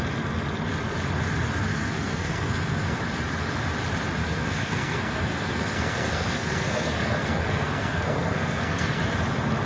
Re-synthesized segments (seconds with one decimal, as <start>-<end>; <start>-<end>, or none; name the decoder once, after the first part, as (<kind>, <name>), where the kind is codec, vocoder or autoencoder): 1.7-3.0 (codec, SNAC); 4.2-9.0